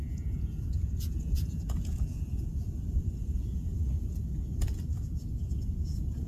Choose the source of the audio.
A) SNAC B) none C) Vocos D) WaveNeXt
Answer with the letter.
C